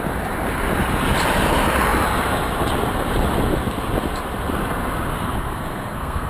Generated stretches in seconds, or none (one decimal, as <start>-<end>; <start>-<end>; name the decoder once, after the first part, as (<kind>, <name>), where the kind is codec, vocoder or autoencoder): 5.1-6.3 (codec, SNAC)